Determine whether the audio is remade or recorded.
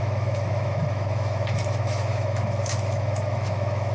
remade